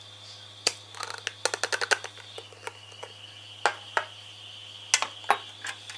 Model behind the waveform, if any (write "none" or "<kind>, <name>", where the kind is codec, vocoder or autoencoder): none